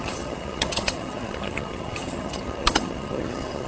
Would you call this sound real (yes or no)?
no